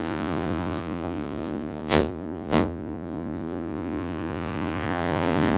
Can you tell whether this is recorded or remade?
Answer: remade